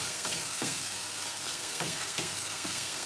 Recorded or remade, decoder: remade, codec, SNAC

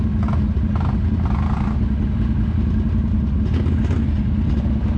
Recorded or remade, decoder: recorded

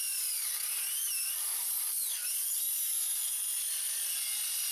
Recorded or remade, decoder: recorded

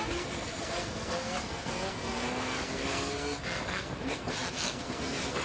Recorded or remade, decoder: remade, codec, SNAC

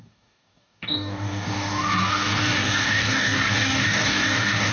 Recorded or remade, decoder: remade, codec, DAC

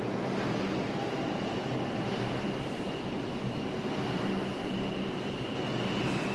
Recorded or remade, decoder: recorded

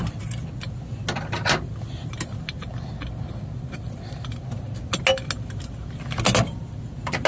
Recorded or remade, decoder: recorded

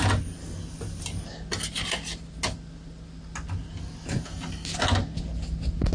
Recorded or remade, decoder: recorded